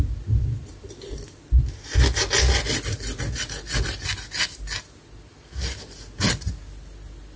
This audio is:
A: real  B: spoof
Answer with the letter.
A